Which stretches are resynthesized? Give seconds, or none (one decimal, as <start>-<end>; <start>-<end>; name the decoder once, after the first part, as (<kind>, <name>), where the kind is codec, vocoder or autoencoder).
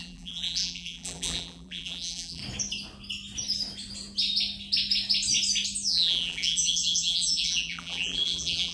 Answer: 0.0-2.4 (vocoder, BigVGAN v2); 5.9-8.7